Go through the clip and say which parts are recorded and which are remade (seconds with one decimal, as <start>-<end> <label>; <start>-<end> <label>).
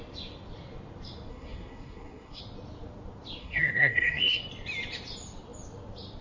0.0-1.3 recorded; 1.3-2.4 remade; 2.4-3.4 recorded; 3.4-4.4 remade; 4.4-6.2 recorded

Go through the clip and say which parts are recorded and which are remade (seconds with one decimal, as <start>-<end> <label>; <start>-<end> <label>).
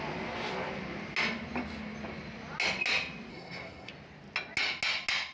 0.0-3.3 recorded; 3.3-3.9 remade; 3.9-5.3 recorded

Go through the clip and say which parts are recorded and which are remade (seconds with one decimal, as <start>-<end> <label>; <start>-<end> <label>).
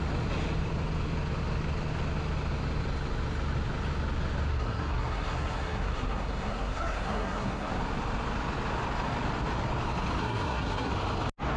0.0-4.5 recorded; 4.5-7.7 remade; 7.7-10.2 recorded; 10.2-10.9 remade; 10.9-11.6 recorded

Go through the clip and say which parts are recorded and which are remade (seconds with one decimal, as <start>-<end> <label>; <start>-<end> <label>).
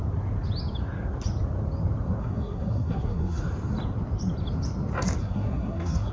0.0-2.2 recorded; 2.2-3.4 remade; 3.4-5.2 recorded; 5.2-6.1 remade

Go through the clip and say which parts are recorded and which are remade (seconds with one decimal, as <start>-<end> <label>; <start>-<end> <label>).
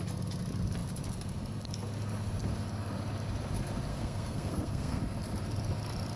0.0-3.9 recorded; 3.9-5.0 remade; 5.0-6.2 recorded